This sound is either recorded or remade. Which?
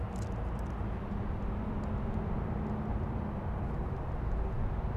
recorded